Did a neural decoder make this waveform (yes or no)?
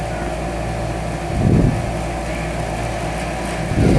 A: no